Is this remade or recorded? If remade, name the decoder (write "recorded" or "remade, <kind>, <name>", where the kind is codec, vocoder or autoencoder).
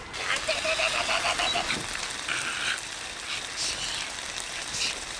recorded